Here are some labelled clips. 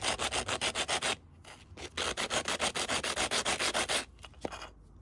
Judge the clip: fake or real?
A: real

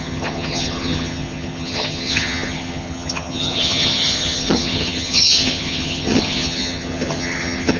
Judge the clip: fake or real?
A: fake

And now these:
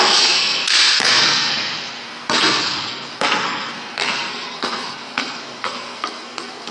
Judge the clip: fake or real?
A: fake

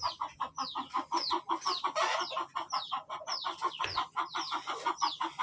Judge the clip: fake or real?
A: fake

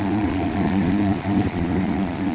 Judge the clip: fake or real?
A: fake